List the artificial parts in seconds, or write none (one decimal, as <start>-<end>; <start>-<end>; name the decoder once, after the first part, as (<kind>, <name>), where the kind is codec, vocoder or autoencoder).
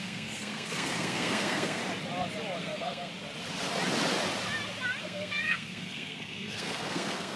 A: 0.0-1.8 (codec, SNAC); 2.6-3.1; 5.0-7.4